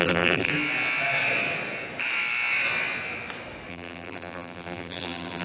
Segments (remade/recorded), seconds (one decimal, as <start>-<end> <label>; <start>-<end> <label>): 0.0-0.5 remade; 0.5-3.7 recorded; 3.7-5.4 remade